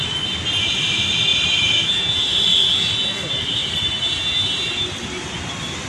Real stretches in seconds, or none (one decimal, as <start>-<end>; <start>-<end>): 0.0-1.3; 1.9-3.6; 5.4-5.9